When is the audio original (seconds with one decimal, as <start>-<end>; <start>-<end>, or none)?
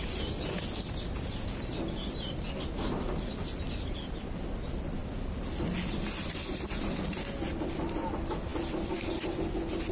0.0-9.9